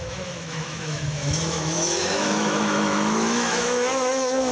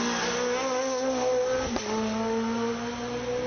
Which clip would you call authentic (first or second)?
second